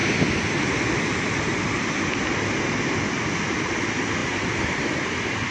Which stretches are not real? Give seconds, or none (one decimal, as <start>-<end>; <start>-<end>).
none